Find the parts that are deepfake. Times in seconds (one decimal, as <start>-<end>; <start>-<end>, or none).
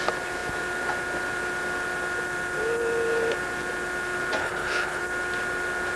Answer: 4.4-5.0